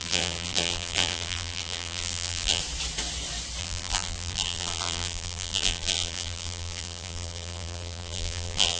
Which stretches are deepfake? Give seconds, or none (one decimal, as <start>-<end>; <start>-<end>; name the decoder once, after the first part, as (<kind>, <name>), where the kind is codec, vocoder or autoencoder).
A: 0.0-2.6 (vocoder, BigVGAN v2); 3.6-8.8